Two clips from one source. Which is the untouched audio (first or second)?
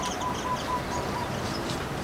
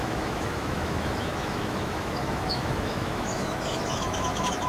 first